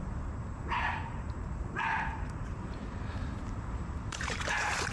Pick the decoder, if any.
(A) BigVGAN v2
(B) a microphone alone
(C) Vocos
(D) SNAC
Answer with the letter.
A